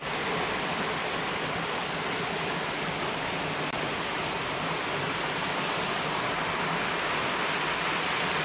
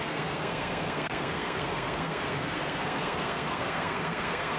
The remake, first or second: second